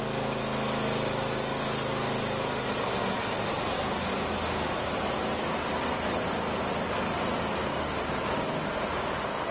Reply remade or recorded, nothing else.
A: recorded